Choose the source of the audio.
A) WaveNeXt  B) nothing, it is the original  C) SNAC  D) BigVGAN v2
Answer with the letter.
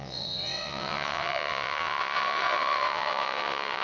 A